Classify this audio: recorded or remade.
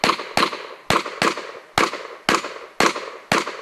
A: recorded